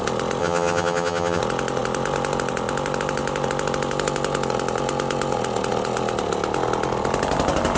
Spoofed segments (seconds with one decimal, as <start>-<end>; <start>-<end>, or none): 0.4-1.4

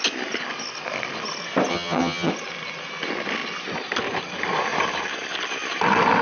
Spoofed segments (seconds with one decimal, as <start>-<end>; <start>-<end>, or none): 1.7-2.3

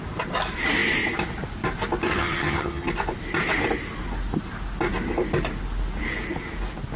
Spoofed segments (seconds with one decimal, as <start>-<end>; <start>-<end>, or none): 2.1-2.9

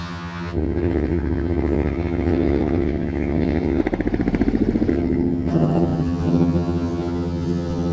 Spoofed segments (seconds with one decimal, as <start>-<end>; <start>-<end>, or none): 0.0-3.8; 4.9-7.9